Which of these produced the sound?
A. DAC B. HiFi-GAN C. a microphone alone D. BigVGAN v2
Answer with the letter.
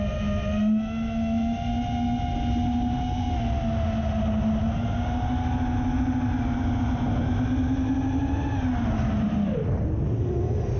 C